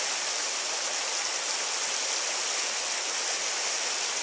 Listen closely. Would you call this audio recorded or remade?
recorded